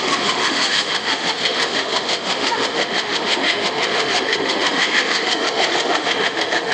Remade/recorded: remade